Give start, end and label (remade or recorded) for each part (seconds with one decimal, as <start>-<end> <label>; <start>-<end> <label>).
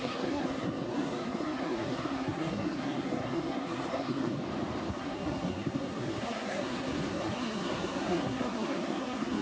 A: 0.0-4.4 remade; 4.4-4.9 recorded; 4.9-9.4 remade